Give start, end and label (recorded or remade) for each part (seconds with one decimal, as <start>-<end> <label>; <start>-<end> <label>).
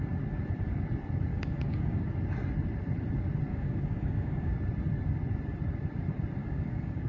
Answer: 0.0-1.3 recorded; 1.3-2.1 remade; 2.1-3.5 recorded; 3.5-4.5 remade; 4.5-6.4 recorded; 6.4-7.1 remade